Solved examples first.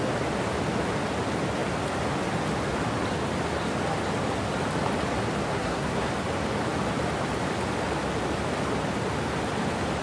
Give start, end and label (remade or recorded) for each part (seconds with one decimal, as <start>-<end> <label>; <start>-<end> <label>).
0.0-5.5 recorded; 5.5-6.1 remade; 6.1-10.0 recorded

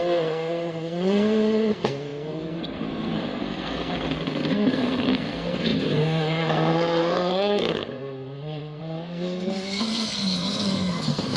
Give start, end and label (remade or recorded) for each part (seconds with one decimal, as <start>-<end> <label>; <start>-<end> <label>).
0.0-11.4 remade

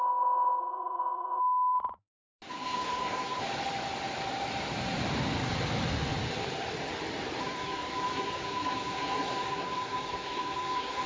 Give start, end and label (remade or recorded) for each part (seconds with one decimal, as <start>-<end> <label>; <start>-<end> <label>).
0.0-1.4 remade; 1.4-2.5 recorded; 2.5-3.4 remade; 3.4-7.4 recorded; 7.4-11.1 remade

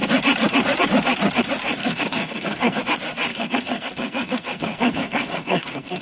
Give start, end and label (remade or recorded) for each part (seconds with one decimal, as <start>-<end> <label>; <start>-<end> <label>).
0.0-1.8 recorded; 1.8-2.8 remade; 2.8-3.3 recorded; 3.3-6.0 remade

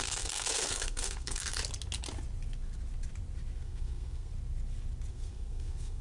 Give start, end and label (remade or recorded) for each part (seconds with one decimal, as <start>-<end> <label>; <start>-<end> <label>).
0.0-1.6 remade; 1.6-3.6 recorded; 3.6-4.3 remade; 4.3-5.1 recorded; 5.1-6.0 remade

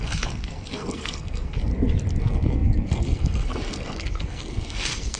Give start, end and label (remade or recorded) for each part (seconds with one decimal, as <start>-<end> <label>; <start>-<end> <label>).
0.0-1.7 remade; 1.7-2.2 recorded; 2.2-5.2 remade